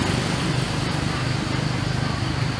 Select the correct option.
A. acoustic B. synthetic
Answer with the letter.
A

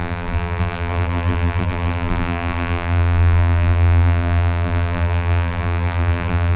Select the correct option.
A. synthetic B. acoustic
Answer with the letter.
A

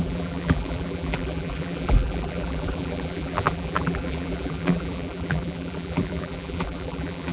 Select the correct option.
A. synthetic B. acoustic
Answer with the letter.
A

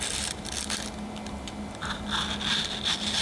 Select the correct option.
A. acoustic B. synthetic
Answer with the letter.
A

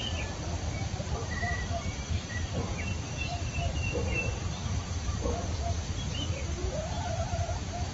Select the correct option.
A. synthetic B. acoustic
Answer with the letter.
A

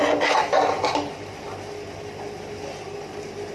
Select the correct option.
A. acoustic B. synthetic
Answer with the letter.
A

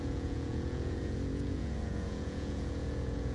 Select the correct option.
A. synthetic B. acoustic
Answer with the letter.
A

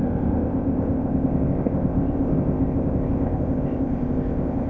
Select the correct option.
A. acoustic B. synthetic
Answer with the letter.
B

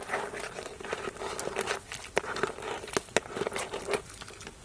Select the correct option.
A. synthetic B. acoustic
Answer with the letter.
B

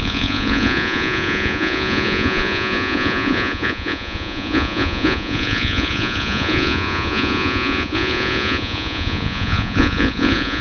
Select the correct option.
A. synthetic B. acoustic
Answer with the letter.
A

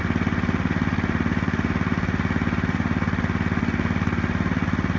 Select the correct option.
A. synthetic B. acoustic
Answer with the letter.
B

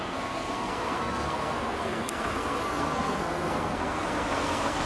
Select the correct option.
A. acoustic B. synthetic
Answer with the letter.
B